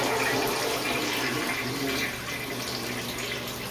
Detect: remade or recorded recorded